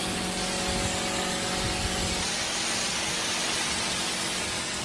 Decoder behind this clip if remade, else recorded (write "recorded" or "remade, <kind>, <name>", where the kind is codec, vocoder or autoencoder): recorded